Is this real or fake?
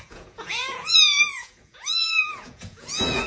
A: fake